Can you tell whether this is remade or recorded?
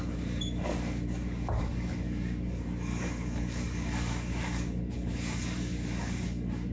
remade